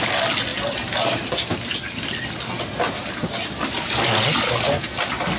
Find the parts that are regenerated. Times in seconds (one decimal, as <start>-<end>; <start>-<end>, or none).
none